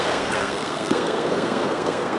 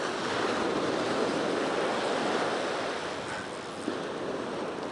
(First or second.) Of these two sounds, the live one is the second